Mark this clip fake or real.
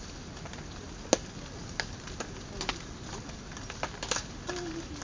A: real